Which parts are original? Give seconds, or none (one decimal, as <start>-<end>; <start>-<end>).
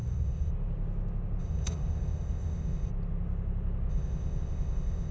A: 0.5-1.4; 2.9-3.9